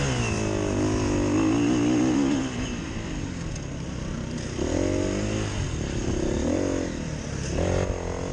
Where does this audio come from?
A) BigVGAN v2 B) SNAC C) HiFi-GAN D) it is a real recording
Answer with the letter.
D